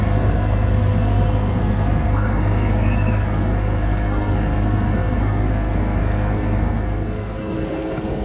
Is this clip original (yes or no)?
no